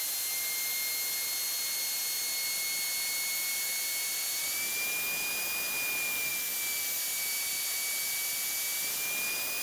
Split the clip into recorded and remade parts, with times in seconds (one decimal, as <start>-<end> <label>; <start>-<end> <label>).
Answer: 0.0-9.6 recorded